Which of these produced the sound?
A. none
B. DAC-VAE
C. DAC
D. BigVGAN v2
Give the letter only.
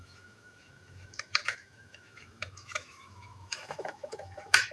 B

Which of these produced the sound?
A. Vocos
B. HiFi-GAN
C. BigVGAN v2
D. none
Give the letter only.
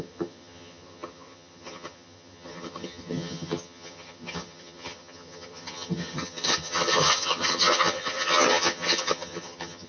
B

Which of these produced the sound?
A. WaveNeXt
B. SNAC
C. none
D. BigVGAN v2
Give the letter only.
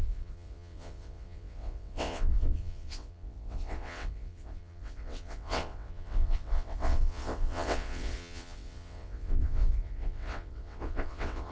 A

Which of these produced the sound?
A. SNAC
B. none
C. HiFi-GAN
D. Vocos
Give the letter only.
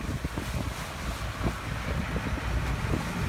B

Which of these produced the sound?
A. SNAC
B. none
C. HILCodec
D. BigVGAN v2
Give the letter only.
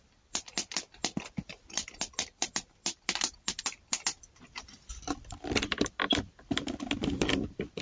D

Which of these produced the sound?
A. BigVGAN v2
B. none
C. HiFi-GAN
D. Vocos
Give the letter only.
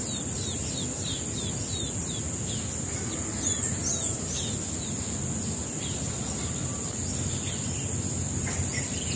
B